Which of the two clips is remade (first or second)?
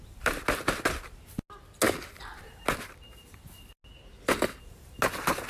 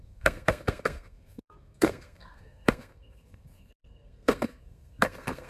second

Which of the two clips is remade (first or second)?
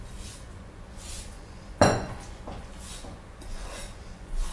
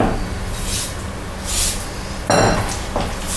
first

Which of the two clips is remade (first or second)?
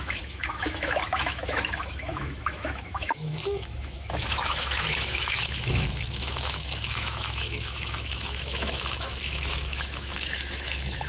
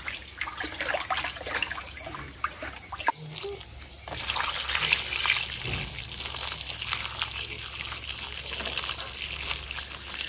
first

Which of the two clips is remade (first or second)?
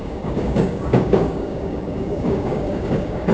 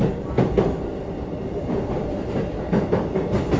first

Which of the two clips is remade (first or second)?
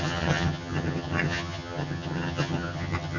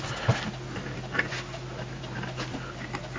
first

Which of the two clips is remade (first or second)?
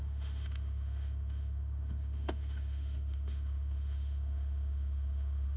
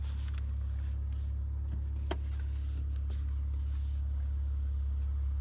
first